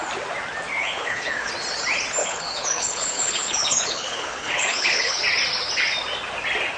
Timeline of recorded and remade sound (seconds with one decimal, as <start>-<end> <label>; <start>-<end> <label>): 0.0-0.8 recorded; 0.8-1.5 remade; 1.5-2.2 recorded; 2.2-5.2 remade; 5.2-6.8 recorded